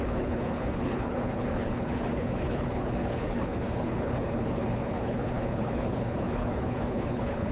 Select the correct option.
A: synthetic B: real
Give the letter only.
A